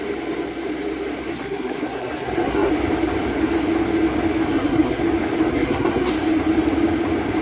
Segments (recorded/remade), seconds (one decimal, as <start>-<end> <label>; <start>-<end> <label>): 0.0-1.3 recorded; 1.3-2.7 remade; 2.7-4.5 recorded; 4.5-5.0 remade; 5.0-5.5 recorded; 5.5-6.1 remade; 6.1-7.4 recorded